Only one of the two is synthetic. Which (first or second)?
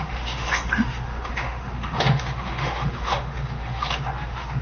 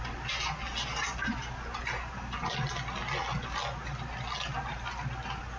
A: first